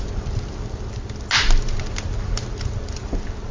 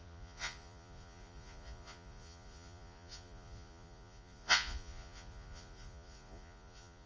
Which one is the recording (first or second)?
first